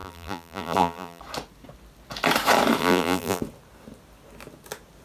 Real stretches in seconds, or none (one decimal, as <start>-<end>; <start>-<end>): 1.2-2.8; 3.4-5.0